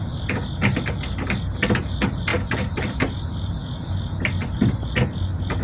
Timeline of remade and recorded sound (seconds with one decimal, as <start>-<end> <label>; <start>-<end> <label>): 0.0-2.3 recorded; 2.3-3.2 remade; 3.2-5.6 recorded